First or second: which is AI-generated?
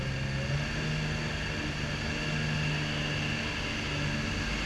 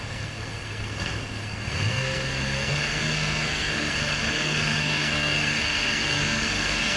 second